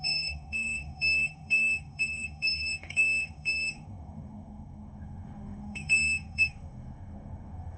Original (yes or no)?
no